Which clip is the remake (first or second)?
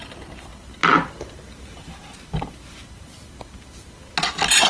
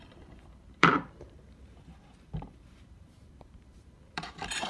second